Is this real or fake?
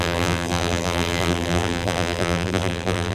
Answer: fake